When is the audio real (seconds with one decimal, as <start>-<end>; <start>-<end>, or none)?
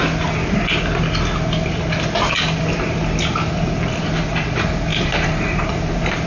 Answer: 0.0-4.9